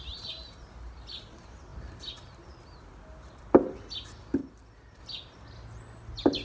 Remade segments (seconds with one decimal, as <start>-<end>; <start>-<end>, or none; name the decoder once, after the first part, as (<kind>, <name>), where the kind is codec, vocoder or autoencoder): none